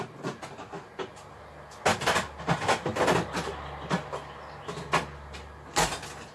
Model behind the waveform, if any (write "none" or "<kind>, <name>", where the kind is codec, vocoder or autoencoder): none